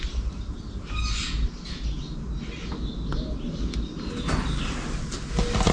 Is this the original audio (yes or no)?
yes